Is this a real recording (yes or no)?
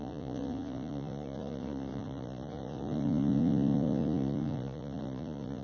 no